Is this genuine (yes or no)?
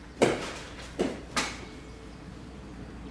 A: no